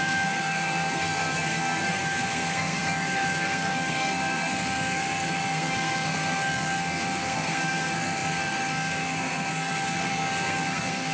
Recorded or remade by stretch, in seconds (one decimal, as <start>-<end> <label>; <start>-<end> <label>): 0.0-11.1 remade